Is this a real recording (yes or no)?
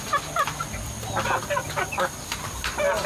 yes